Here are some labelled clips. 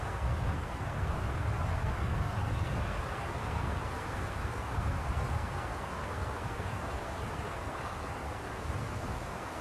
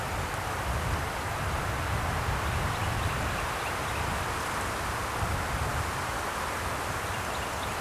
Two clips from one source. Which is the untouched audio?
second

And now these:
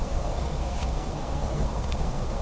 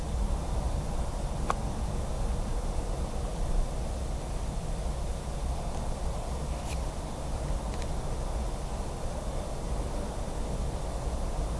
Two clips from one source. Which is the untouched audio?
second